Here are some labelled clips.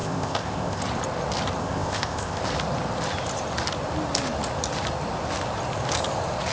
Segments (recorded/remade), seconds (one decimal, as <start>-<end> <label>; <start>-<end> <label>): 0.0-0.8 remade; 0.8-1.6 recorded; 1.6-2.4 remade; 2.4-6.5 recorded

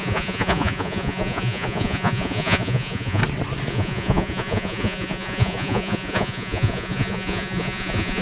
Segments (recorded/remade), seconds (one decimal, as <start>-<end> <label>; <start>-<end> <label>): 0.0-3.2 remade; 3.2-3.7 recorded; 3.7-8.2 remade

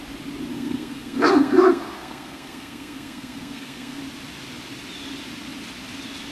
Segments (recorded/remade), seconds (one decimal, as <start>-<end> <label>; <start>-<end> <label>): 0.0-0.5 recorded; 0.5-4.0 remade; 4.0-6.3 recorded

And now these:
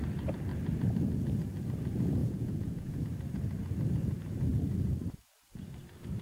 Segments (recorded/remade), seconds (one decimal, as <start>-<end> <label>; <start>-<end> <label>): 0.0-2.2 recorded; 2.2-3.0 remade; 3.0-6.2 recorded

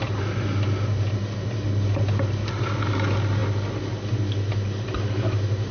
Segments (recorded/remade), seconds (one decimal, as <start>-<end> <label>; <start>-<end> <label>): 0.0-5.7 recorded

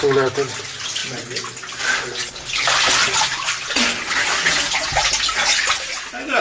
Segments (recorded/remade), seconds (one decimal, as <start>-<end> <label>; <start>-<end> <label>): 0.0-6.4 recorded

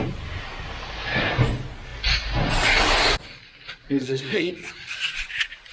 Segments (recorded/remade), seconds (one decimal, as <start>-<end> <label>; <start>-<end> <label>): 0.0-4.0 recorded; 4.0-4.5 remade; 4.5-5.7 recorded

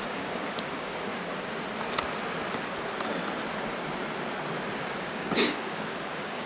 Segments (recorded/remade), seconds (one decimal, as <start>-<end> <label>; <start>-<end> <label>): 0.0-1.1 remade; 1.1-4.9 recorded; 4.9-6.5 remade